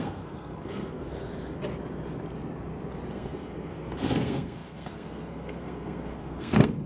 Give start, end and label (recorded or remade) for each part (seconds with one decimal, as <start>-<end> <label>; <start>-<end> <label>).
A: 0.0-1.3 remade; 1.3-3.1 recorded; 3.1-6.9 remade